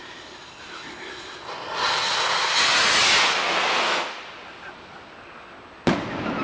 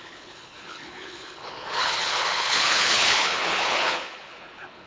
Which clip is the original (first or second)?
first